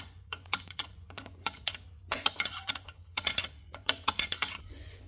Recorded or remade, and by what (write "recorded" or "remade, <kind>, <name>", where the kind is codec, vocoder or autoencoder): remade, vocoder, Vocos